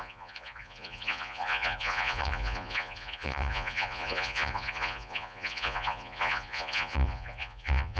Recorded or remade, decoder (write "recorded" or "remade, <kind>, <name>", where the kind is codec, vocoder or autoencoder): remade, vocoder, Vocos